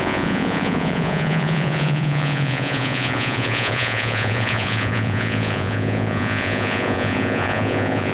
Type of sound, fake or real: fake